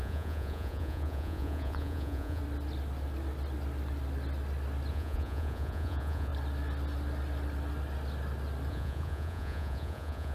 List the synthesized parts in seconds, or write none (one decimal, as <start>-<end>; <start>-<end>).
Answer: 0.0-2.4; 4.9-6.3; 8.7-10.3